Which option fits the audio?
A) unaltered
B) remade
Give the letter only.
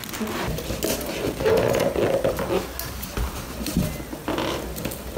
A